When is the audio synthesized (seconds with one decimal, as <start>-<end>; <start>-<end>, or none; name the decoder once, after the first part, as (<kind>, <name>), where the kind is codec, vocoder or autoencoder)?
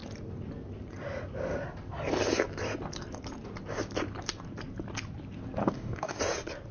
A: 5.6-6.2 (codec, DAC)